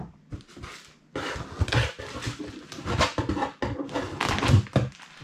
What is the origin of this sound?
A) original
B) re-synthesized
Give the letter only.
A